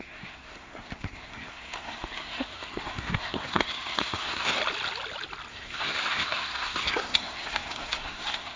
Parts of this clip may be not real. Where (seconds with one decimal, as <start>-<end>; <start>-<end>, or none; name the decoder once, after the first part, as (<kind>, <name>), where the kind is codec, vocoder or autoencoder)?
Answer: 0.0-4.6 (codec, SNAC); 5.5-8.6